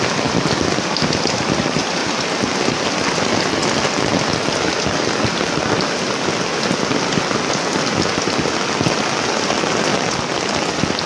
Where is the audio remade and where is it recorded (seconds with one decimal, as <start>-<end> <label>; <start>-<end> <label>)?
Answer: 0.0-11.1 recorded